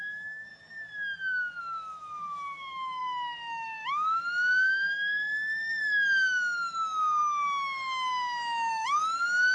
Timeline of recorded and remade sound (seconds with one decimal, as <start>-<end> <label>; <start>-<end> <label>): 0.0-0.5 remade; 0.5-1.6 recorded; 1.6-7.2 remade; 7.2-8.7 recorded; 8.7-9.5 remade